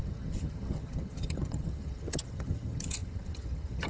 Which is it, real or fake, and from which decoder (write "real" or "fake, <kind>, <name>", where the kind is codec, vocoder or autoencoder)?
fake, vocoder, HiFi-GAN